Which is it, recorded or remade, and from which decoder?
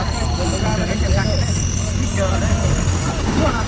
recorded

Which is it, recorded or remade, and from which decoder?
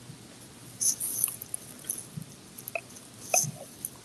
recorded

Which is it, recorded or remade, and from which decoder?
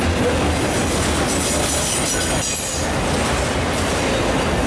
recorded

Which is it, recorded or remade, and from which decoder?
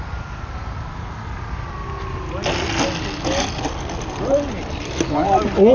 recorded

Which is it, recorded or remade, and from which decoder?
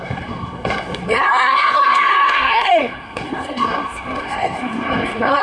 remade, codec, SNAC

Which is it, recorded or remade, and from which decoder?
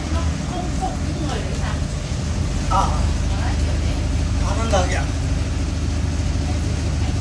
recorded